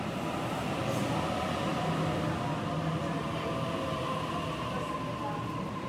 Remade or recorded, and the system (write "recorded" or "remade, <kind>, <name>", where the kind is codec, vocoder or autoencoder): recorded